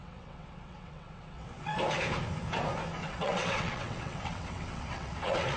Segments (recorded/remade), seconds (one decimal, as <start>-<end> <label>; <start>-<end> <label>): 0.0-1.8 remade; 1.8-3.0 recorded; 3.0-5.6 remade